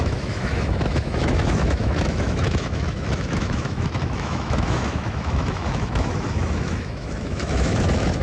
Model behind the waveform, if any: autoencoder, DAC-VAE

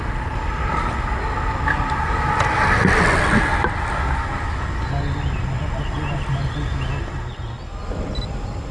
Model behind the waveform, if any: none